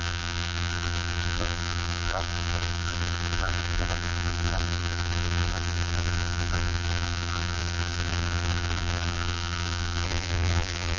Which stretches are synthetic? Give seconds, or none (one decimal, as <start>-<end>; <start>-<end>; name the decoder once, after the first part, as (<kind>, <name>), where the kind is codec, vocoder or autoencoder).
0.0-11.0 (vocoder, BigVGAN v2)